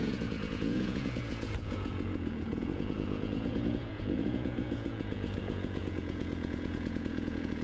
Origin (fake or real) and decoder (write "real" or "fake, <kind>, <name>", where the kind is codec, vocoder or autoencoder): fake, vocoder, Vocos